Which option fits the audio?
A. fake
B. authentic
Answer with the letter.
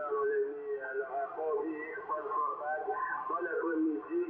B